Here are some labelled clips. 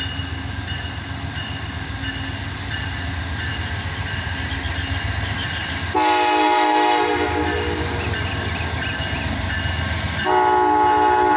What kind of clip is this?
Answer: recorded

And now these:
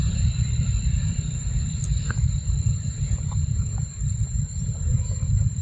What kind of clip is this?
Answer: remade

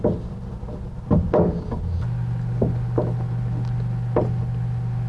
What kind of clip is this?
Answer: recorded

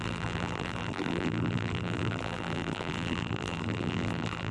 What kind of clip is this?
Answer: remade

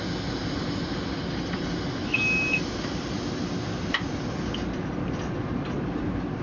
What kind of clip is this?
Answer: recorded